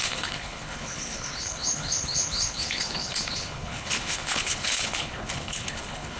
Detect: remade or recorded remade